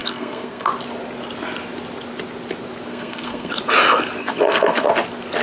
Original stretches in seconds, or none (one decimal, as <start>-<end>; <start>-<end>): 0.7-2.9; 3.5-4.2; 4.9-5.4